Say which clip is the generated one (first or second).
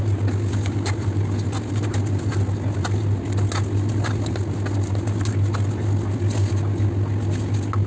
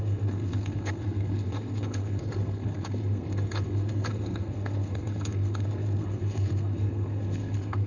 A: second